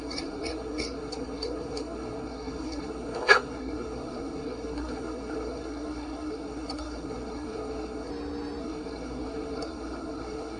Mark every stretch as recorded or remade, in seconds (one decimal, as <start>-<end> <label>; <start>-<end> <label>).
0.0-8.1 remade; 8.1-8.6 recorded; 8.6-10.6 remade

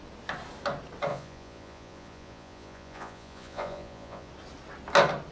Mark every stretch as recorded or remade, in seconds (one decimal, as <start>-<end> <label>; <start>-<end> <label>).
0.0-1.1 recorded; 1.1-4.3 remade; 4.3-5.3 recorded

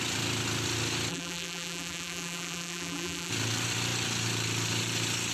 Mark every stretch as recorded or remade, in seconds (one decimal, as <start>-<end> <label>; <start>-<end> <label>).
0.0-1.1 recorded; 1.1-3.3 remade; 3.3-5.3 recorded

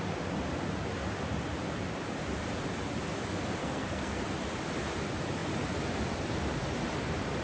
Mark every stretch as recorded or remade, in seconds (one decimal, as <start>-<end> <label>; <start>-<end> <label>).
0.0-3.6 recorded; 3.6-4.2 remade; 4.2-7.4 recorded

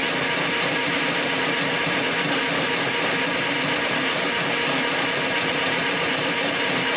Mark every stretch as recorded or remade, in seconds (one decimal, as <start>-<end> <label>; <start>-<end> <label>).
0.0-7.0 recorded